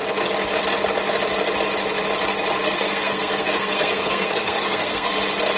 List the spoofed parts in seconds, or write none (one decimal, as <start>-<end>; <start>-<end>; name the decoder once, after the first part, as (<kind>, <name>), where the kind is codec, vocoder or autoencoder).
2.6-5.1 (codec, SNAC)